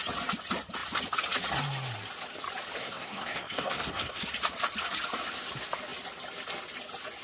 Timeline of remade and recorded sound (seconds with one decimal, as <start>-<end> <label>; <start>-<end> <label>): 0.0-2.8 recorded; 2.8-4.2 remade; 4.2-7.2 recorded